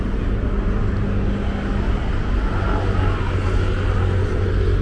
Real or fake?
real